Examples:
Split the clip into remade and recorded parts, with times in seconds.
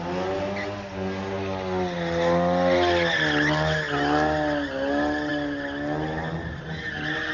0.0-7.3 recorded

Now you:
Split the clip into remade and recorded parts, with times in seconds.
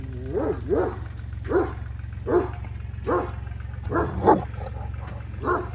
0.0-5.7 recorded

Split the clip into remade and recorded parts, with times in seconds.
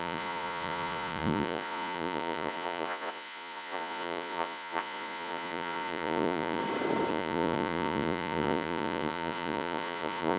0.0-6.6 remade; 6.6-7.1 recorded; 7.1-10.4 remade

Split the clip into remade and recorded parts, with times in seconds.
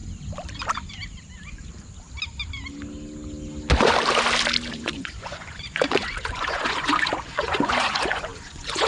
0.0-4.7 recorded; 4.7-8.9 remade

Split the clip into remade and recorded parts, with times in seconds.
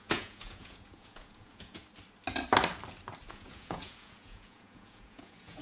0.0-1.8 remade; 1.8-3.3 recorded; 3.3-5.6 remade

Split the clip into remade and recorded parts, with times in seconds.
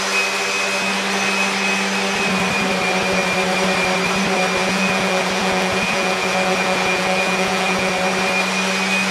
0.0-4.6 recorded; 4.6-7.9 remade; 7.9-9.1 recorded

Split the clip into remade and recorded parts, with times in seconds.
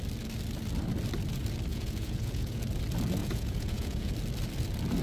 0.0-1.7 recorded; 1.7-2.6 remade; 2.6-3.2 recorded; 3.2-4.1 remade; 4.1-5.0 recorded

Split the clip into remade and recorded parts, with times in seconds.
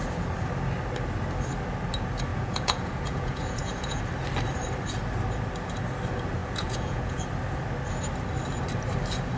0.0-2.3 recorded; 2.3-4.0 remade; 4.0-6.4 recorded; 6.4-7.2 remade; 7.2-9.4 recorded